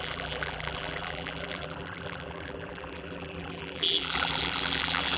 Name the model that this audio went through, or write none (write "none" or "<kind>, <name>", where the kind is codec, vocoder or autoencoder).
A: vocoder, BigVGAN v2